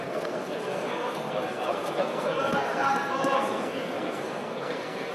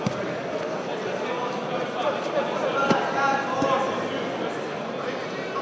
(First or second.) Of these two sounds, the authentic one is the second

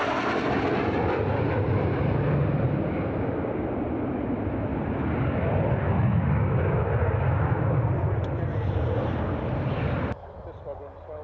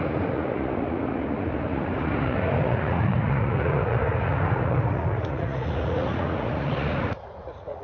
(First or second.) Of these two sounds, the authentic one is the first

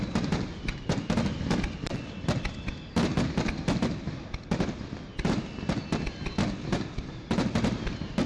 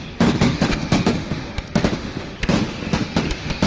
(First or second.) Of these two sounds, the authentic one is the first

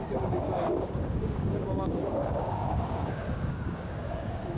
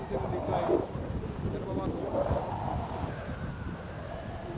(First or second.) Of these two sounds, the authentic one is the second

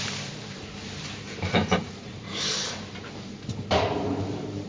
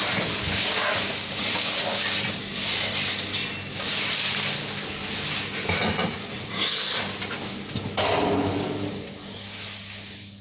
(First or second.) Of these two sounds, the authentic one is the second